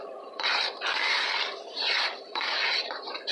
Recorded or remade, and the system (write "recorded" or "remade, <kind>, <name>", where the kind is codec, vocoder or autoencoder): remade, vocoder, BigVGAN v2